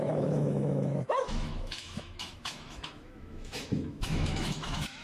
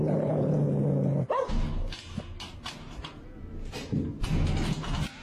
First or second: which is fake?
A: first